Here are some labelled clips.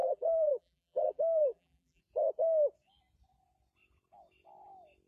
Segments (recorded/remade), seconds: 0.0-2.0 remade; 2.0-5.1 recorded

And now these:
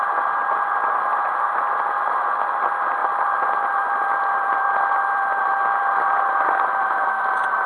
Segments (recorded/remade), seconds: 0.0-3.0 recorded; 3.0-7.0 remade; 7.0-7.7 recorded

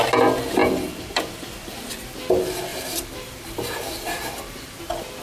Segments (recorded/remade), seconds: 0.0-0.6 recorded; 0.6-1.2 remade; 1.2-2.7 recorded; 2.7-4.8 remade; 4.8-5.2 recorded

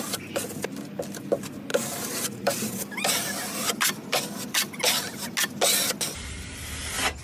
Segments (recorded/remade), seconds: 0.0-1.7 recorded; 1.7-3.1 remade; 3.1-4.1 recorded; 4.1-4.8 remade; 4.8-7.2 recorded